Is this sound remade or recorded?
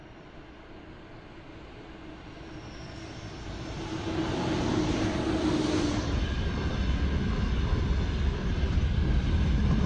recorded